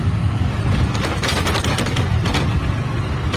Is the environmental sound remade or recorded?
recorded